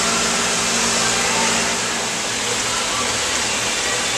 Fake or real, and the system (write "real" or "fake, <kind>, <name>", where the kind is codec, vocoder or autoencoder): real